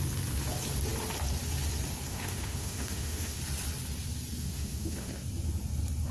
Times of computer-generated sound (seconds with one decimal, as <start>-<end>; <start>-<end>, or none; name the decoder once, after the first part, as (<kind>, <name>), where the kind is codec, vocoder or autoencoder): 2.1-3.4 (autoencoder, DAC-VAE); 4.4-5.1